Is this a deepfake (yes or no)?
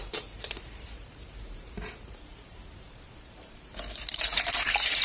yes